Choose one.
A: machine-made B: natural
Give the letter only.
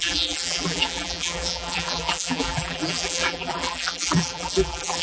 A